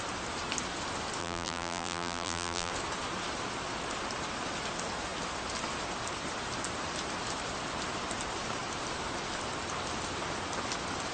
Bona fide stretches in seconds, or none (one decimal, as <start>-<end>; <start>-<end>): 0.0-1.2; 2.7-11.1